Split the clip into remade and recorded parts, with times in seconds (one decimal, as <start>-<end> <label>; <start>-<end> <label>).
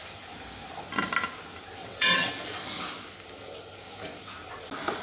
0.0-1.8 recorded; 1.8-2.3 remade; 2.3-5.0 recorded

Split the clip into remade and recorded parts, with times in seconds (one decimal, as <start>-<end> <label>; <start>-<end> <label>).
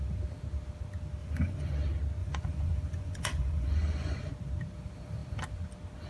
0.0-1.2 recorded; 1.2-1.7 remade; 1.7-2.2 recorded; 2.2-4.3 remade; 4.3-6.1 recorded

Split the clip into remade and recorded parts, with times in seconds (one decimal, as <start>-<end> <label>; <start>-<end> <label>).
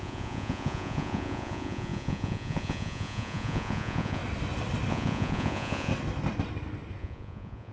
0.0-4.2 remade; 4.2-4.9 recorded; 4.9-5.9 remade; 5.9-7.0 recorded; 7.0-7.7 remade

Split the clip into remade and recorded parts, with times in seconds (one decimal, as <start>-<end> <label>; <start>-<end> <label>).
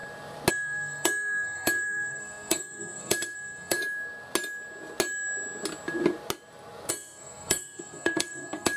0.0-0.5 recorded; 0.5-3.8 remade; 3.8-6.9 recorded; 6.9-8.8 remade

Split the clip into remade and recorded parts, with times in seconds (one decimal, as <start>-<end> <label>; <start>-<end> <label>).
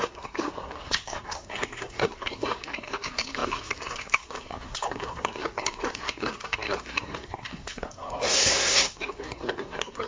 0.0-10.1 remade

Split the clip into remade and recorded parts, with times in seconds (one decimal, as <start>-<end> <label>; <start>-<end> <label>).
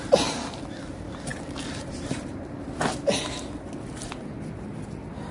0.0-5.3 recorded